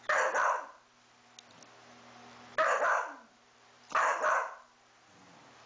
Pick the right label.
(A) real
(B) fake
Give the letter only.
A